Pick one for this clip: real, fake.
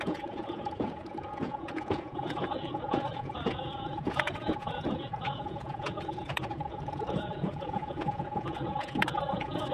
fake